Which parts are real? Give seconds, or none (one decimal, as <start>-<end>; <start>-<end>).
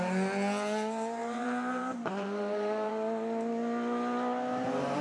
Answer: 0.0-1.2; 2.9-5.0